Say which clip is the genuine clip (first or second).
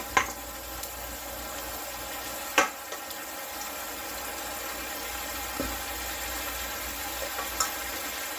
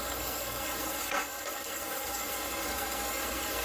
first